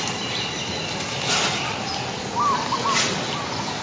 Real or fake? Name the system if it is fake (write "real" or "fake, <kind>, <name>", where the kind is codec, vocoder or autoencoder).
real